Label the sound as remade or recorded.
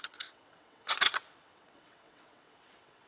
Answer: remade